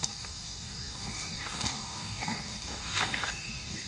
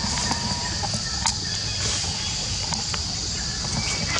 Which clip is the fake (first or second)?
first